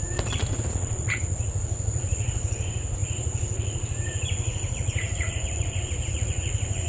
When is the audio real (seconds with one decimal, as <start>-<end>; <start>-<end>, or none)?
none